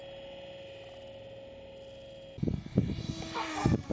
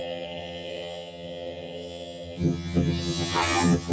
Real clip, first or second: first